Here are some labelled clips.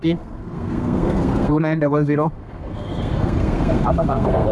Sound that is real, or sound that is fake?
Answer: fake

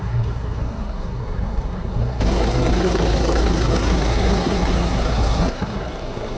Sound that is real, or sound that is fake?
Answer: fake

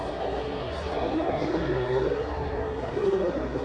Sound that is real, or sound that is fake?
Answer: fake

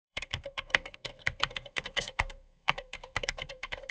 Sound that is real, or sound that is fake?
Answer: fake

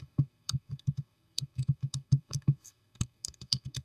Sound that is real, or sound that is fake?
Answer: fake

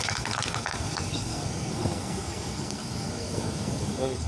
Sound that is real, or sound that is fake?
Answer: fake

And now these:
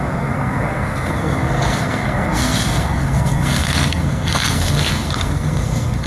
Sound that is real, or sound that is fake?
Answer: fake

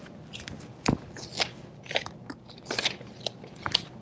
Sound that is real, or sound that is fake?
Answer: real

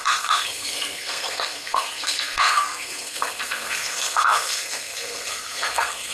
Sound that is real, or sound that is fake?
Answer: fake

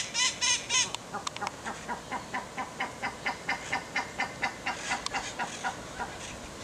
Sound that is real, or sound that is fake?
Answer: real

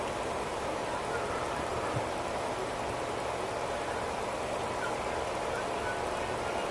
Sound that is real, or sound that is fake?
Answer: real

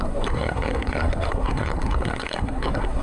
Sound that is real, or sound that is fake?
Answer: fake